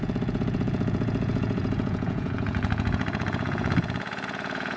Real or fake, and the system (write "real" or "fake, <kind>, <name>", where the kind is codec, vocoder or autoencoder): fake, vocoder, Vocos